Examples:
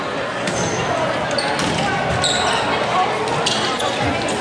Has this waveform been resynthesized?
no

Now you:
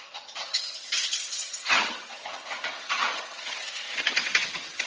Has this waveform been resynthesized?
yes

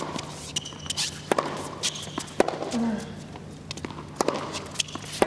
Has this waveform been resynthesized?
no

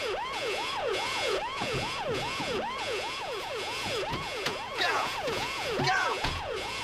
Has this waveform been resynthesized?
yes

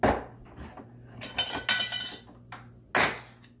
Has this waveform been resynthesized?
no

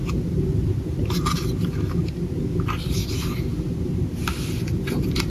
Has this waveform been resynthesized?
no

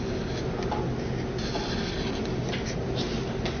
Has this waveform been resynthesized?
no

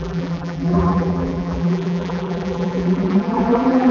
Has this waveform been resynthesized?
yes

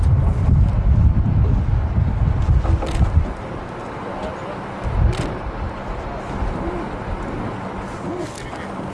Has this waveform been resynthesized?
no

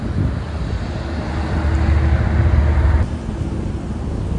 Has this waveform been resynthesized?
no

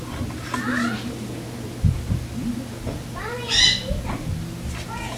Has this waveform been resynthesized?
no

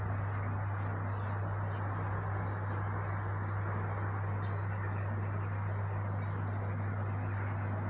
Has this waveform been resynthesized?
no